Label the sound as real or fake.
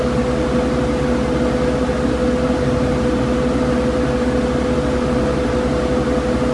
real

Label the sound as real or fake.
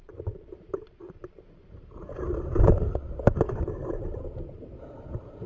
fake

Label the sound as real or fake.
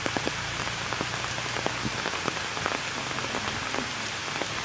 real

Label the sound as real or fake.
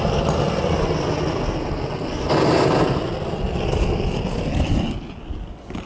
real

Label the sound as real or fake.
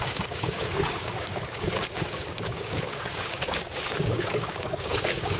fake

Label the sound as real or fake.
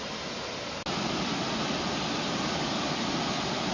real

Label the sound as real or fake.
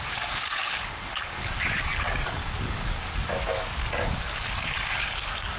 fake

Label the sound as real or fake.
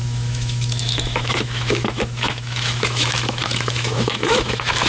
fake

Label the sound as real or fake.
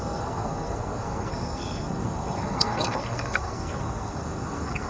fake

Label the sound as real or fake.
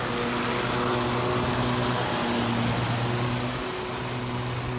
real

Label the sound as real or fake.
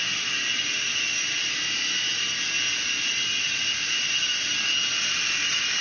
real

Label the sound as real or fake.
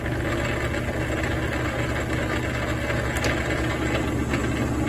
real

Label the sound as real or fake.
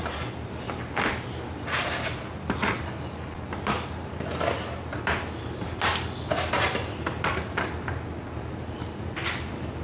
real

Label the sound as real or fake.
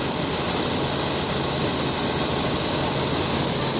fake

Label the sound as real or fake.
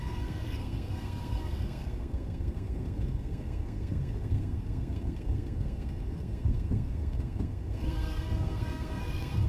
fake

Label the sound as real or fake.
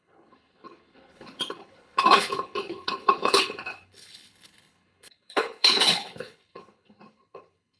fake